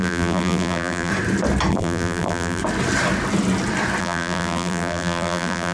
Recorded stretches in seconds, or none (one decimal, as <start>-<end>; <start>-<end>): 1.1-1.7; 2.6-4.0